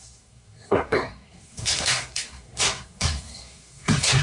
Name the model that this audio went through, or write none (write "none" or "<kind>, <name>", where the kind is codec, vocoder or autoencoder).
codec, SNAC